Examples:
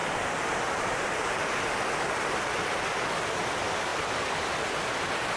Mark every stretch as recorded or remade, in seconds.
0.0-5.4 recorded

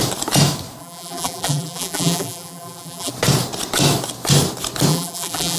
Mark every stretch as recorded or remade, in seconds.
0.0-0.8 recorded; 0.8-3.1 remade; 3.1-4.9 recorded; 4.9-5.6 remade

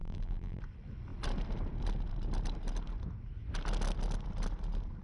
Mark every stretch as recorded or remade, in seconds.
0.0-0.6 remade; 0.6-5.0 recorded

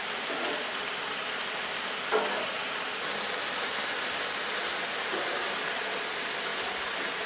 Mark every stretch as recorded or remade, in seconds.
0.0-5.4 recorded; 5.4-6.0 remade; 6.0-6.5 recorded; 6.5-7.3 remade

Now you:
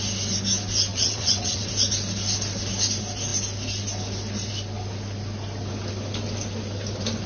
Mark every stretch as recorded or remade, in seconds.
0.0-0.9 recorded; 0.9-1.7 remade; 1.7-7.3 recorded